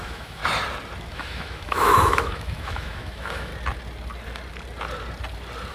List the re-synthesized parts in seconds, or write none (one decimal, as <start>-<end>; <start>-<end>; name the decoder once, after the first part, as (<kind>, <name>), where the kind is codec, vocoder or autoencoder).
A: 0.0-0.4 (autoencoder, DAC-VAE); 1.1-3.5